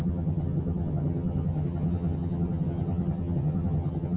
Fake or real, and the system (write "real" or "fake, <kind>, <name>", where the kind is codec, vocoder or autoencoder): fake, vocoder, HiFi-GAN